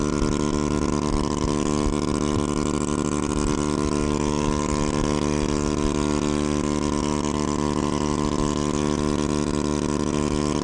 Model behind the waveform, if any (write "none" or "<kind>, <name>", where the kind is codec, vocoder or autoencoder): none